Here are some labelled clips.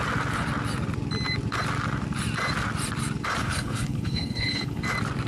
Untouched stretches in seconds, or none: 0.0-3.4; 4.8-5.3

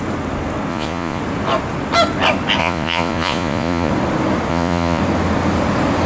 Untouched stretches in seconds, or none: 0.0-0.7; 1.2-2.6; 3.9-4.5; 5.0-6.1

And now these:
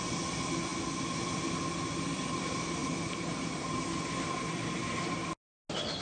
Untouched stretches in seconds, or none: 0.0-6.0

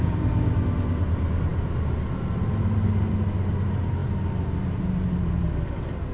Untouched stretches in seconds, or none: 0.0-6.1

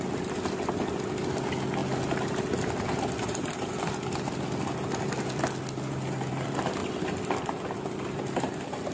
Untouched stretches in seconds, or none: 0.0-8.9